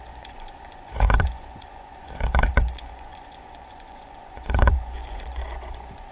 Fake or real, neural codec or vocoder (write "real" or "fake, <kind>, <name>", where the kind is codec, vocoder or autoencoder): fake, vocoder, Vocos